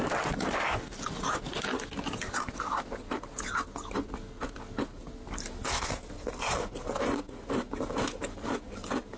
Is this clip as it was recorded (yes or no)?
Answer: yes